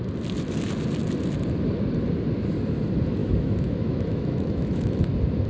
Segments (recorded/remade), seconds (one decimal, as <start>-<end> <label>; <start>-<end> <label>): 0.0-3.2 recorded; 3.2-5.0 remade; 5.0-5.5 recorded